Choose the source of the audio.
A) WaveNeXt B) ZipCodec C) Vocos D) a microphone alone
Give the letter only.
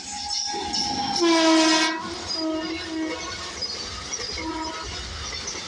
D